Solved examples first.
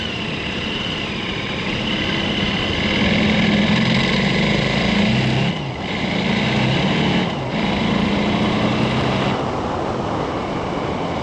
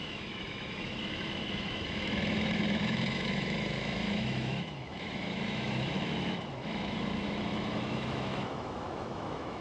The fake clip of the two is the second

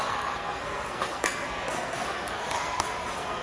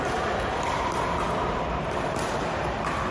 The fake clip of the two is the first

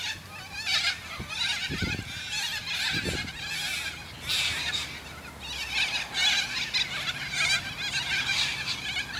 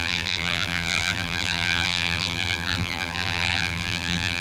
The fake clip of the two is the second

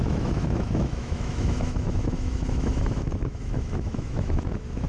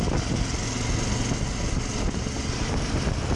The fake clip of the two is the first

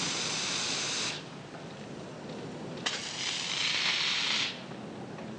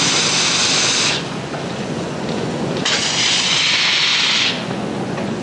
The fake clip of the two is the second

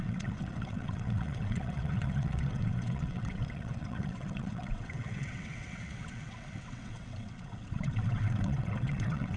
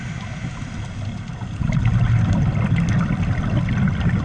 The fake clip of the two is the first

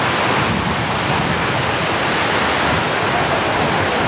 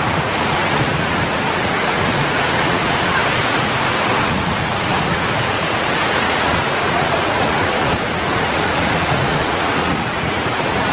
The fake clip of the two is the second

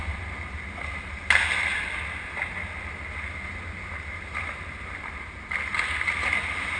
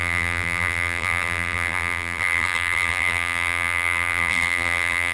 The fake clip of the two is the second